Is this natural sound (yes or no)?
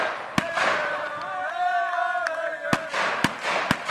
yes